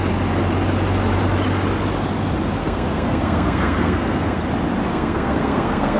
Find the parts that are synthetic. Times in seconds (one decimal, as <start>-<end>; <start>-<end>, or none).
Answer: 2.6-4.4; 4.9-6.0